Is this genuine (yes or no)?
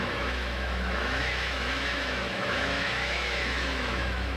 no